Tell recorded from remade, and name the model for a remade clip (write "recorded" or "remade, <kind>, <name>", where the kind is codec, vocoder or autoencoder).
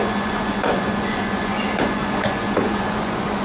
remade, vocoder, Vocos